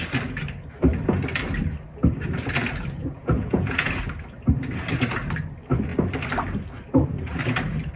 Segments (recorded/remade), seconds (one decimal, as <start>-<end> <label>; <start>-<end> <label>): 0.0-3.0 recorded; 3.0-4.0 remade; 4.0-8.0 recorded